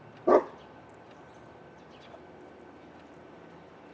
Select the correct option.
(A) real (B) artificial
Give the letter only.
A